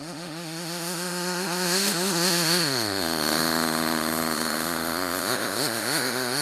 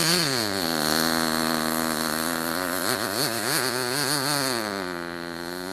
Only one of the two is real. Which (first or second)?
second